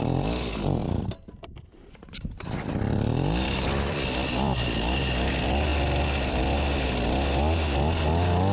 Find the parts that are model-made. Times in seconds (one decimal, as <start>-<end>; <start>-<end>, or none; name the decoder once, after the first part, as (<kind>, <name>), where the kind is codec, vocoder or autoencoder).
0.8-5.3 (vocoder, BigVGAN v2); 5.7-6.4

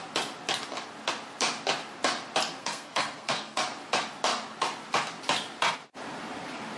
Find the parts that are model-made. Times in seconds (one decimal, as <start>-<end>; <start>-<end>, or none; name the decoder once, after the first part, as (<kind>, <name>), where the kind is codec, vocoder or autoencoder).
2.6-3.6 (codec, SNAC)